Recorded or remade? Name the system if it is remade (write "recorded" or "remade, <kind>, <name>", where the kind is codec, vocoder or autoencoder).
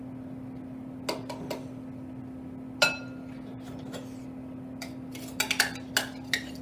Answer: recorded